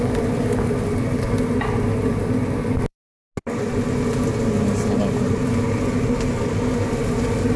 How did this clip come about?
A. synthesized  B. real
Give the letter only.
B